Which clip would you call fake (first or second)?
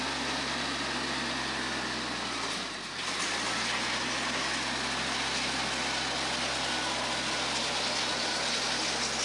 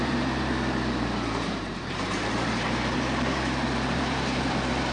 second